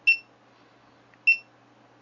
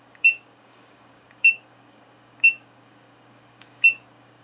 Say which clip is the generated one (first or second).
second